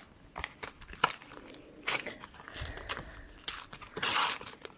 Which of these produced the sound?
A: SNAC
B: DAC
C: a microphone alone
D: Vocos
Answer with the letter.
C